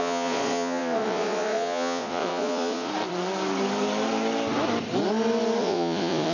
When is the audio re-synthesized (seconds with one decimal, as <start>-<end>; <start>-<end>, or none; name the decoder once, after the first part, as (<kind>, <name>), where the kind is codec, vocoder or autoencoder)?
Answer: 0.0-2.9 (vocoder, Vocos); 5.6-6.3